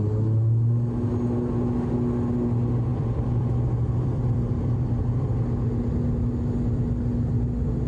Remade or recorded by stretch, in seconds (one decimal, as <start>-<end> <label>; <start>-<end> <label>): 0.0-2.9 recorded; 2.9-5.3 remade; 5.3-7.9 recorded